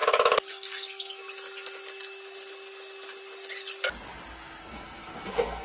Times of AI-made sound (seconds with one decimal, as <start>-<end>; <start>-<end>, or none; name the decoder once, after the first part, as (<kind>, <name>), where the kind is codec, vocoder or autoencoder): 0.5-1.2 (codec, SNAC); 4.6-5.6